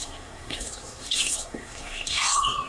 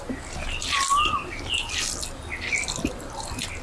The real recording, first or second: second